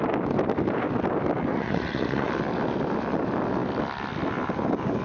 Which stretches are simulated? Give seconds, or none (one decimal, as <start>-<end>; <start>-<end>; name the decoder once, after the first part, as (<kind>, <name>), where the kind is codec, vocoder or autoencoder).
1.5-2.3 (vocoder, Vocos)

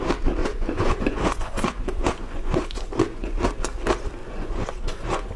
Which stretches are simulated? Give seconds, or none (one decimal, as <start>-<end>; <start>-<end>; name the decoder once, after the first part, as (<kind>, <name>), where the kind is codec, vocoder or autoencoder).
0.4-3.4 (vocoder, Vocos); 4.2-5.4

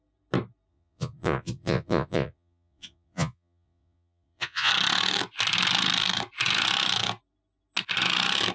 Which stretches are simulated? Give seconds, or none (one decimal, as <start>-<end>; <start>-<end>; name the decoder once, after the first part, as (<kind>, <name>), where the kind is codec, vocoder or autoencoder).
0.7-4.7 (vocoder, Vocos)

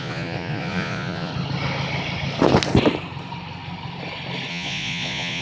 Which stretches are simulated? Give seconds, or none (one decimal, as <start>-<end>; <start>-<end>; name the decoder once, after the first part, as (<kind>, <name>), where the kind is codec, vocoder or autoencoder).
0.0-1.3 (vocoder, Vocos); 4.5-5.4

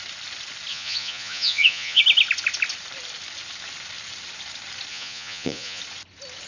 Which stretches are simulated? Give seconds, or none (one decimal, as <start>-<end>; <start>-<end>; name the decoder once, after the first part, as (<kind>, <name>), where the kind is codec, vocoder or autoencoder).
0.7-2.0 (vocoder, Vocos); 4.9-5.8